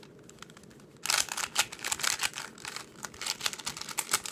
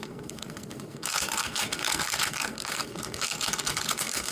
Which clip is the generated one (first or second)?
second